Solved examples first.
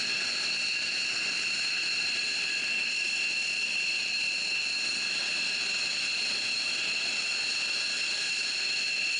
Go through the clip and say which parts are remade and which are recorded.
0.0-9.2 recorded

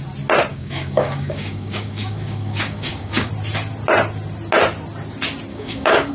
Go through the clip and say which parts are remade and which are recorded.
0.0-0.5 recorded; 0.5-3.3 remade; 3.3-5.5 recorded; 5.5-6.1 remade

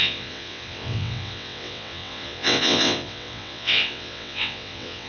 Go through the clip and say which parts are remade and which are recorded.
0.0-5.1 remade

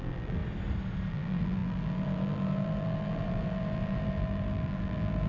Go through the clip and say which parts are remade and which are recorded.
0.0-0.4 remade; 0.4-1.1 recorded; 1.1-5.3 remade

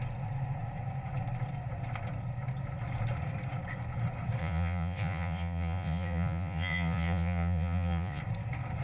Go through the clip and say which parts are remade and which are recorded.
0.0-4.4 recorded; 4.4-8.2 remade; 8.2-8.8 recorded